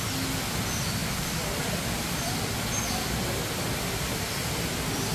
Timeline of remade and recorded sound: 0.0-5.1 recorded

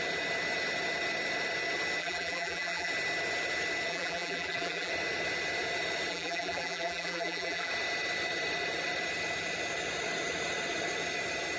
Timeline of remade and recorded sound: 0.0-2.0 recorded; 2.0-2.9 remade; 2.9-3.9 recorded; 3.9-4.9 remade; 4.9-6.1 recorded; 6.1-7.7 remade; 7.7-11.6 recorded

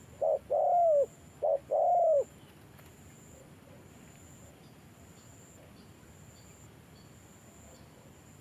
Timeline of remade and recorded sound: 0.0-8.4 recorded